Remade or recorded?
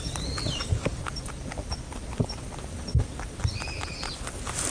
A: recorded